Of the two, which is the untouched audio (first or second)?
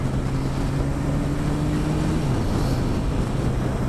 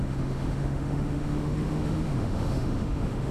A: first